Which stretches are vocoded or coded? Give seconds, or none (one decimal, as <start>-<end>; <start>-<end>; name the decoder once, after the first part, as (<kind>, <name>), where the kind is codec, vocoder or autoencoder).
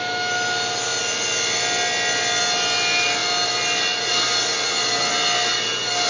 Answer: none